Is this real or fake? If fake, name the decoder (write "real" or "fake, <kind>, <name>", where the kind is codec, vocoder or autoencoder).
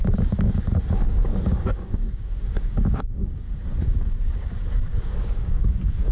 fake, codec, DAC